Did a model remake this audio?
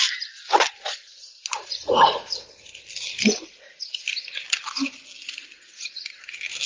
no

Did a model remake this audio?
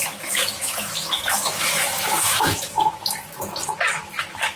yes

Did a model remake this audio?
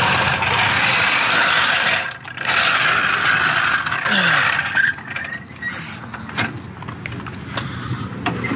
no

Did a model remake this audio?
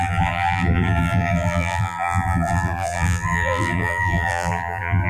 yes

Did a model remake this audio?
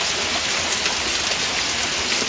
no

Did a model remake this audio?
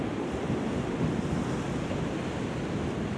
no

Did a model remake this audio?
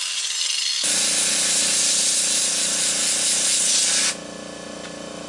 no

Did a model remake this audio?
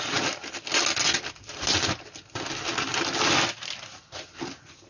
no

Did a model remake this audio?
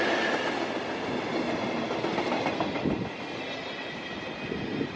no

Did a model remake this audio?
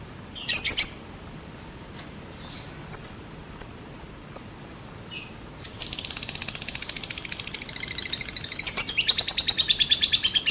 yes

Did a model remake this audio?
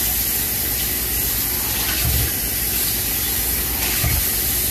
no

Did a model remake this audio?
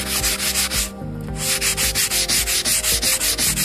no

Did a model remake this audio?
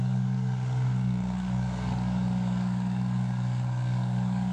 yes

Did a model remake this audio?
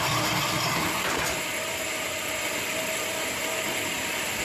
yes